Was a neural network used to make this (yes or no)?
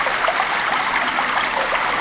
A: no